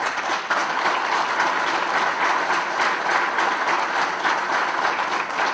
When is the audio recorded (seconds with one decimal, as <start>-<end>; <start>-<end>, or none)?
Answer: 3.1-4.3

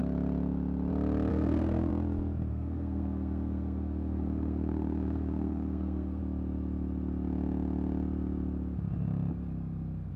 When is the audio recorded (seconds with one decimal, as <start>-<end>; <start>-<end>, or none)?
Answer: 0.0-1.3; 1.9-2.5; 6.2-10.2

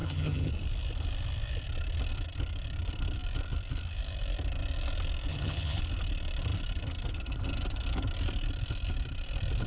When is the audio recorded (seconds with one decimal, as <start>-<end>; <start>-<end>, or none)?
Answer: 0.5-5.3; 5.8-9.7

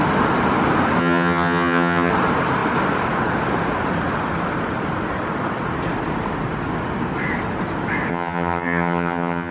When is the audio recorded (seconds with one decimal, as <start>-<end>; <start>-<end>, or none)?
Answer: 0.0-1.0; 2.1-8.1

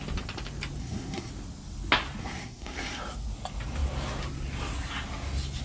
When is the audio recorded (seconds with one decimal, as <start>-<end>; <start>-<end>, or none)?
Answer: 0.0-0.8; 1.3-2.2; 3.0-5.6

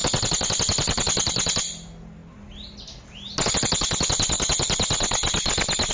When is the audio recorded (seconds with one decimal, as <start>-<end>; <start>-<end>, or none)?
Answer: 0.0-5.9